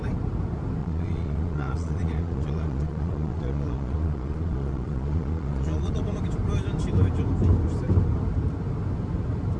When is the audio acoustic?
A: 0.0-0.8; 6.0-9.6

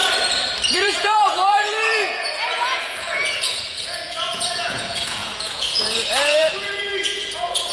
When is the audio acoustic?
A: 0.0-0.7

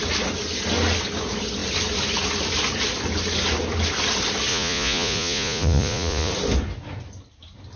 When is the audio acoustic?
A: 0.0-4.5; 6.3-7.8

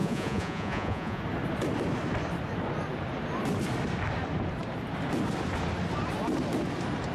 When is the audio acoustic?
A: 1.2-7.1

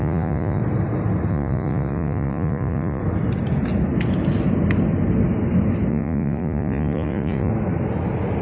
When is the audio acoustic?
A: 0.6-1.3; 3.0-5.9; 7.5-8.4

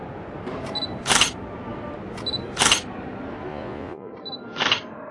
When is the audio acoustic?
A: 0.0-3.5; 4.1-5.1

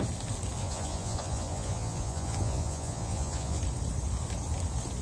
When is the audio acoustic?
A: 0.0-0.6; 3.6-5.0

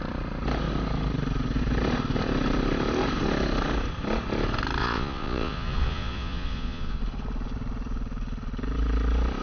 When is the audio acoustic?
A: 0.0-4.8; 7.0-9.4